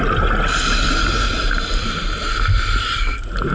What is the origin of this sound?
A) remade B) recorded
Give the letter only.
B